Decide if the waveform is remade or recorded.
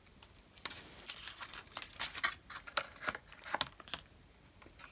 recorded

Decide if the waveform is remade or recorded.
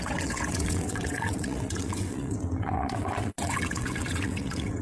remade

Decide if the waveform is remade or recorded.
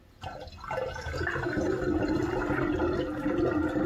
recorded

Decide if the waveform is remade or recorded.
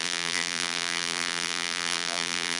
remade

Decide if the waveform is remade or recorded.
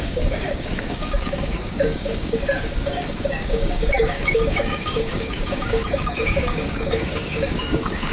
remade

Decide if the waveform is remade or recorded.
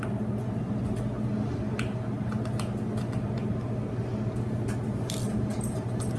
recorded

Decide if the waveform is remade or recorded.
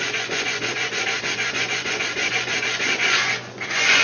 remade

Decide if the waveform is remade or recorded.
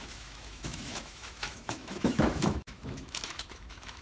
remade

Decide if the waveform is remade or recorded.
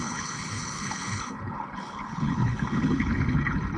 remade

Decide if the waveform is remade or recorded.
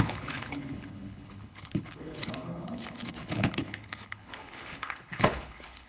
remade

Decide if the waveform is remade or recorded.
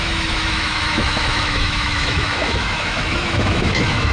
remade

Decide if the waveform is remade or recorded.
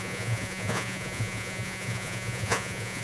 remade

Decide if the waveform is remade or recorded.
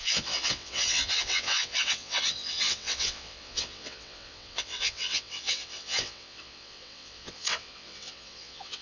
remade